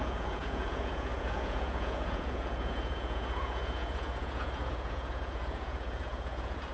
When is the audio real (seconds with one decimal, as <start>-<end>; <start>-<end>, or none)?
none